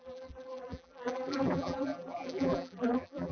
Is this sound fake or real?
fake